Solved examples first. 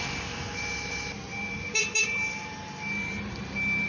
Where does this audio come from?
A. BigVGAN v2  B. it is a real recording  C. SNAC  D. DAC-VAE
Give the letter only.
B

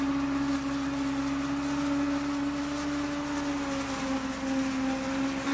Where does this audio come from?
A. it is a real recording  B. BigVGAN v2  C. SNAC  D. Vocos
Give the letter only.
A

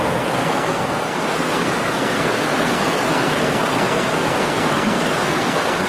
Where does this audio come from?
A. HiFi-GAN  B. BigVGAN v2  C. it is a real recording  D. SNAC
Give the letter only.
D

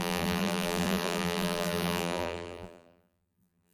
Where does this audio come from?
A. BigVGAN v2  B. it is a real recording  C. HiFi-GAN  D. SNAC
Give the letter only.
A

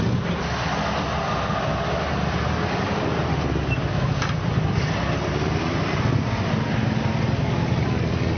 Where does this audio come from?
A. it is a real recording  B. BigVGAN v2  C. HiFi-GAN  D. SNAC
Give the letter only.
A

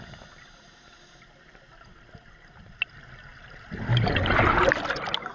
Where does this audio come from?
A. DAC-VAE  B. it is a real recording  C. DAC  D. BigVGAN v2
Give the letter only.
B